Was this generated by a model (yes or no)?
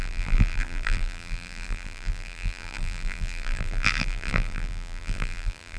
yes